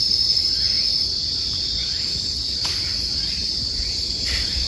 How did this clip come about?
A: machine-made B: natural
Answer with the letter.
B